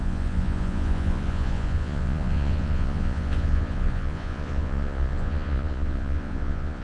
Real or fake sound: fake